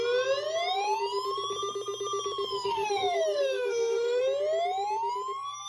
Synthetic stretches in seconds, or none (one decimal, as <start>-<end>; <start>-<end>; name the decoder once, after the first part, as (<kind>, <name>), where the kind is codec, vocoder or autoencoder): 2.5-4.2 (codec, SNAC)